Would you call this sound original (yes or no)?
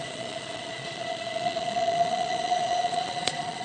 no